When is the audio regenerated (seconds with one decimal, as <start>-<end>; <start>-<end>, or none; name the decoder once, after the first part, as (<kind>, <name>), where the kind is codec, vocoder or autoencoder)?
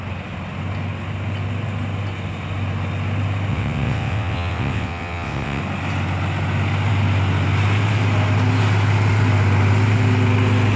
3.5-5.6 (vocoder, WaveNeXt)